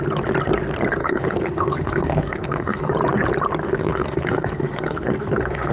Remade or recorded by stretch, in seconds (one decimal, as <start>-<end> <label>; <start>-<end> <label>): 0.0-1.0 recorded; 1.0-2.9 remade; 2.9-3.6 recorded; 3.6-5.7 remade